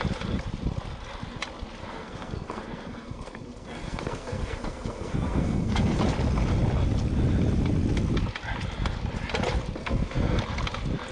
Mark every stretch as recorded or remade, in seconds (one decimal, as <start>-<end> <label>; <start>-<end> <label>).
0.0-1.8 recorded; 1.8-6.0 remade; 6.0-9.8 recorded; 9.8-10.4 remade; 10.4-11.1 recorded

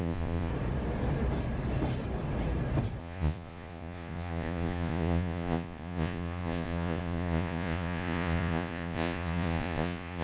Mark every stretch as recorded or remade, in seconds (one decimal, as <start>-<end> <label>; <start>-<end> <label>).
0.0-0.5 remade; 0.5-3.0 recorded; 3.0-10.2 remade